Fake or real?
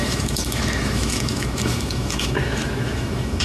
fake